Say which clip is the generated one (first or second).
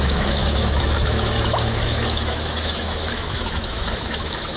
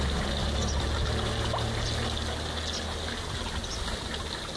first